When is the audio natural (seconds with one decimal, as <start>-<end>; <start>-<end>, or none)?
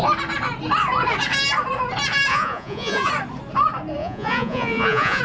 0.0-2.3; 3.1-4.0